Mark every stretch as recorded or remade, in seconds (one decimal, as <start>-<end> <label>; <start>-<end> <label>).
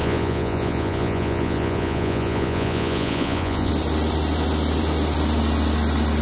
0.0-3.7 remade; 3.7-6.2 recorded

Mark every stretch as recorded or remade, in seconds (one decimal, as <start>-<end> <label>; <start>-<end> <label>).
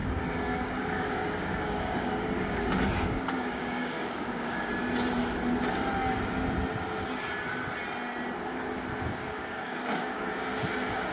0.0-4.7 remade; 4.7-9.2 recorded; 9.2-10.3 remade; 10.3-11.1 recorded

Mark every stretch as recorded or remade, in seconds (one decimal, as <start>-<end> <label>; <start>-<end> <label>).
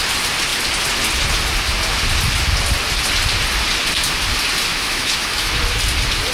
0.0-4.7 recorded; 4.7-5.5 remade; 5.5-6.3 recorded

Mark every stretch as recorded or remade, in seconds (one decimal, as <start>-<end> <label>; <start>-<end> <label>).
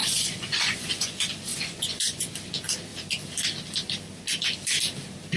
0.0-1.1 remade; 1.1-1.5 recorded; 1.5-2.3 remade; 2.3-5.4 recorded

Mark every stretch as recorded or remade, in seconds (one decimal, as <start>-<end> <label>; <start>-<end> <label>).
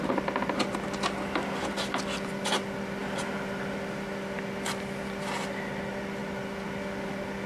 0.0-7.5 recorded